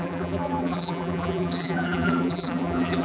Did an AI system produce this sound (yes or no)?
yes